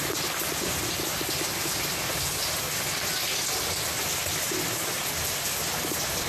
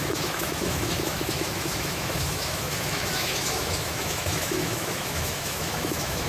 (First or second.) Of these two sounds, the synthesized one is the second